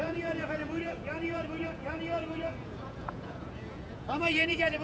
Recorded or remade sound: remade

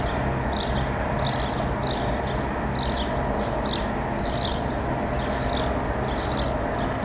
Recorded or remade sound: recorded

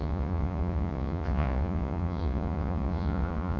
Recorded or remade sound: remade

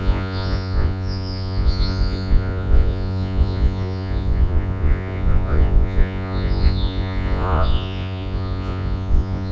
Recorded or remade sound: remade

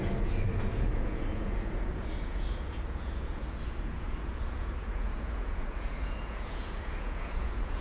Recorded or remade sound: remade